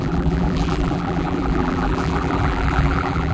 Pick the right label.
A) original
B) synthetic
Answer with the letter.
B